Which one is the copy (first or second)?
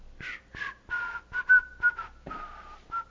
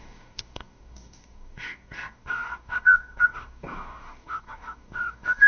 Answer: second